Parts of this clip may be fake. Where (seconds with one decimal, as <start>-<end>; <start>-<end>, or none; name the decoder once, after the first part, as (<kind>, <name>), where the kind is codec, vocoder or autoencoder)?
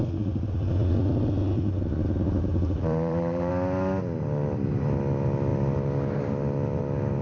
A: 2.5-3.5 (vocoder, BigVGAN v2)